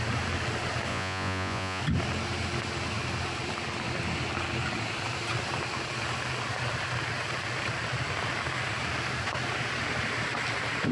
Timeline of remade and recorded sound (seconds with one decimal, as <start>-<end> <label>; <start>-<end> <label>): 0.0-0.9 recorded; 0.9-1.8 remade; 1.8-10.9 recorded